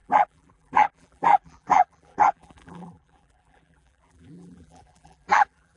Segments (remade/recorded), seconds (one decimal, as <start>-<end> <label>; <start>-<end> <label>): 0.0-5.8 remade